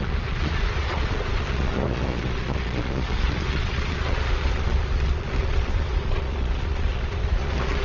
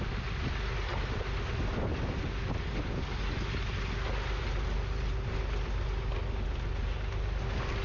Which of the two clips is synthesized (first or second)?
first